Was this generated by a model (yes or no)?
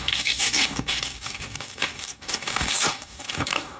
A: yes